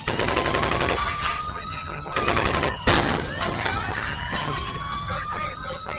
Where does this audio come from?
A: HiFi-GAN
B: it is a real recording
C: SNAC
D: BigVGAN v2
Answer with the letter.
A